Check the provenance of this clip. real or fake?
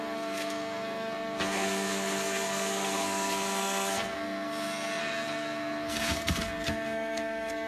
fake